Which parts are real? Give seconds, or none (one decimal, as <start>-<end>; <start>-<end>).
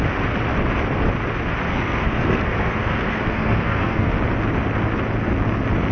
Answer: 0.0-1.7; 4.1-5.9